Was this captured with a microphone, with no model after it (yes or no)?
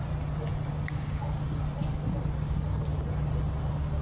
yes